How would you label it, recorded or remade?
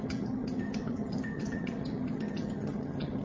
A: remade